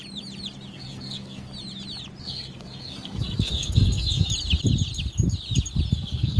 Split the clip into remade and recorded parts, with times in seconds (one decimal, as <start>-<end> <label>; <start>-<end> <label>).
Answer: 0.0-0.7 recorded; 0.7-1.5 remade; 1.5-2.2 recorded; 2.2-4.3 remade; 4.3-5.9 recorded; 5.9-6.4 remade